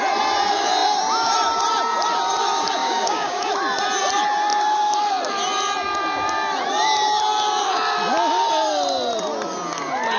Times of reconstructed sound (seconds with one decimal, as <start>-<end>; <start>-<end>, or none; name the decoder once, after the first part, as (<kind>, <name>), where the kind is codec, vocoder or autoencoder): 2.8-3.5 (codec, DAC)